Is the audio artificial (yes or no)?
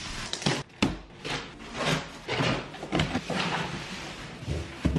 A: no